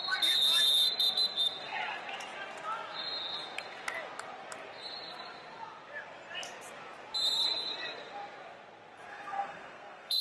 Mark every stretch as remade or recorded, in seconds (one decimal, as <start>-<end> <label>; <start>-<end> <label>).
0.0-9.1 recorded; 9.1-10.2 remade